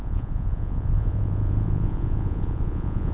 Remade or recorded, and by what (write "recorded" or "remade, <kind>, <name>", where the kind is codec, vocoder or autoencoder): remade, vocoder, Vocos